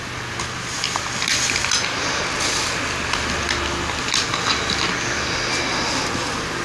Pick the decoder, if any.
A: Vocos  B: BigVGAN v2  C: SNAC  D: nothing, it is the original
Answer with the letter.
D